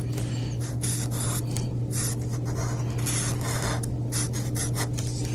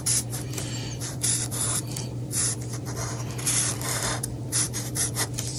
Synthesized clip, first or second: second